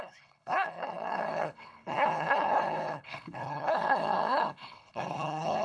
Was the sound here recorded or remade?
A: remade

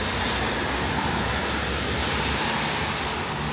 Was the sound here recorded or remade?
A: recorded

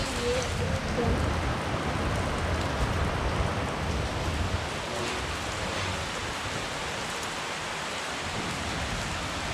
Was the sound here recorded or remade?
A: recorded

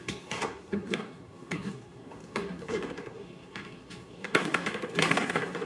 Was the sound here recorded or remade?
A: remade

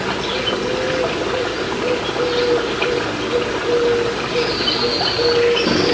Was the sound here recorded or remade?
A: recorded